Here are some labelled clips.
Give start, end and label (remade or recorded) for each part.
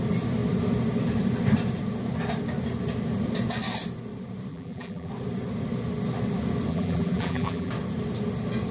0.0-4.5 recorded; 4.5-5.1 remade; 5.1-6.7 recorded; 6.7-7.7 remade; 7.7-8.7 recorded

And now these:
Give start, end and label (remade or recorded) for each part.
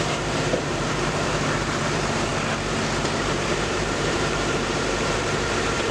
0.0-2.3 remade; 2.3-3.0 recorded; 3.0-5.9 remade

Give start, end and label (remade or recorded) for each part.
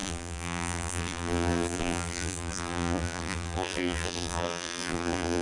0.0-5.4 remade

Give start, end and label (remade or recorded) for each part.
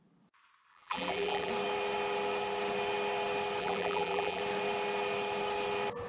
0.0-0.7 recorded; 0.7-1.5 remade; 1.5-3.6 recorded; 3.6-4.4 remade; 4.4-6.1 recorded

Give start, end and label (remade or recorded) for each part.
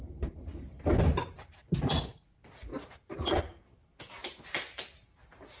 0.0-2.7 recorded; 2.7-3.4 remade; 3.4-4.2 recorded; 4.2-5.6 remade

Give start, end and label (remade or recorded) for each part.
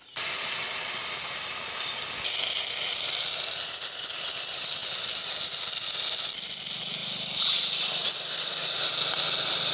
0.0-7.0 recorded; 7.0-8.1 remade; 8.1-9.7 recorded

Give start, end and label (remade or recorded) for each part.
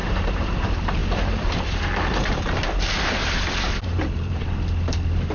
0.0-0.6 remade; 0.6-1.0 recorded; 1.0-1.8 remade; 1.8-3.2 recorded; 3.2-4.4 remade; 4.4-5.3 recorded